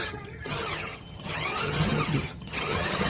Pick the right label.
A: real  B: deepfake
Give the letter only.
B